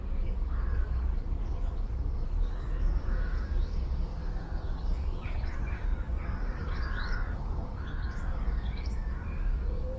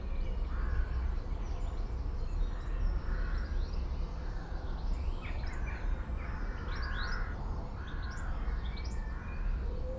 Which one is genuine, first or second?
second